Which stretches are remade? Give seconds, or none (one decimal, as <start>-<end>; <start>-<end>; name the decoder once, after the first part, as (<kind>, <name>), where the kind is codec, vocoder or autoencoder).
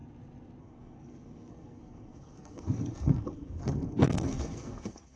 0.6-5.2 (codec, SNAC)